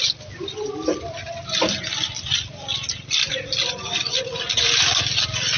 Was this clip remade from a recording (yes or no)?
no